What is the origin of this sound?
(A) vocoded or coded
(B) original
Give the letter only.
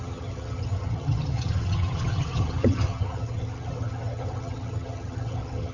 A